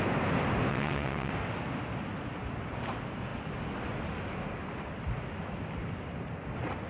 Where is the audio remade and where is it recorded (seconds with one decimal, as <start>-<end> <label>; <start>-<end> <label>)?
0.0-0.7 recorded; 0.7-1.3 remade; 1.3-6.9 recorded